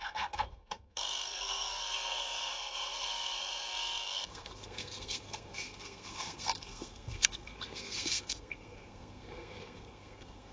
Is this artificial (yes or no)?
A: yes